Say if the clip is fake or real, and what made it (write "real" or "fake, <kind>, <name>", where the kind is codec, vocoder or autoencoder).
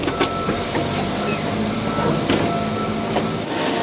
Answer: real